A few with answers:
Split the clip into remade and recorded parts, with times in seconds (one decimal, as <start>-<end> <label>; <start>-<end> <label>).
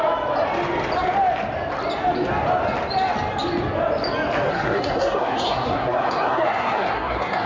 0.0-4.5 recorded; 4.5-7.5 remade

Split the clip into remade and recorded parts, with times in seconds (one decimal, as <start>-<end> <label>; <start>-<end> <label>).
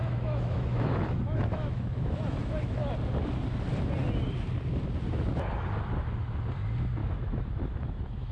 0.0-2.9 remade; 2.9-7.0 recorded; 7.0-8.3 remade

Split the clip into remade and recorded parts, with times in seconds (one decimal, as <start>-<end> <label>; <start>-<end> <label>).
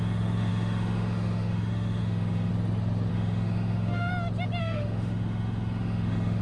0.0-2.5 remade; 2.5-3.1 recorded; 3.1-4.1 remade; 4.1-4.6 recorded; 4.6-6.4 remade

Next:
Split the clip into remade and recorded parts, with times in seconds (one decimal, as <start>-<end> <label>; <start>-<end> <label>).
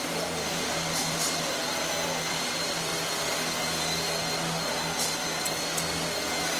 0.0-1.6 remade; 1.6-2.3 recorded; 2.3-2.9 remade; 2.9-6.6 recorded